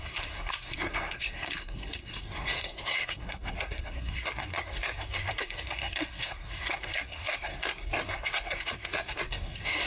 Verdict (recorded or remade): remade